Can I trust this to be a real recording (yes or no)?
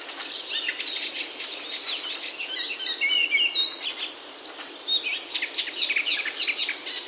yes